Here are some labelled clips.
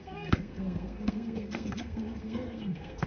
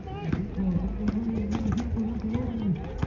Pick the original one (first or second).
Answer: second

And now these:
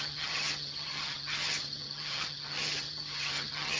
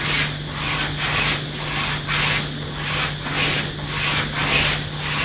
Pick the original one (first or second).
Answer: second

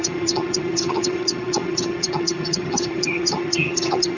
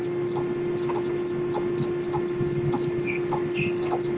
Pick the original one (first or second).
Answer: second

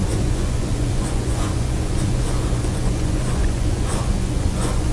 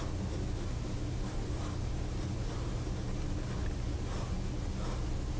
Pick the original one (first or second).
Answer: second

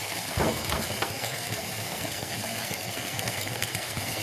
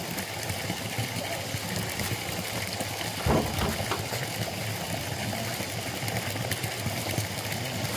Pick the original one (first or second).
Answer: second